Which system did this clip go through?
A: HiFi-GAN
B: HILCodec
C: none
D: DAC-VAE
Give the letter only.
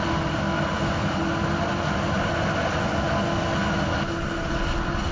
C